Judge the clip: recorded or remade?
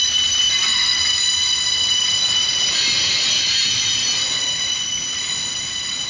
recorded